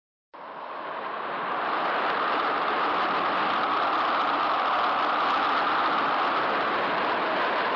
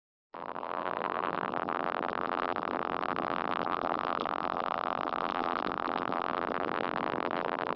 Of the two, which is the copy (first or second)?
second